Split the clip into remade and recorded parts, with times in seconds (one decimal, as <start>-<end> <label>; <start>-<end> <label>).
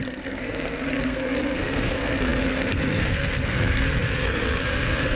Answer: 0.0-5.2 remade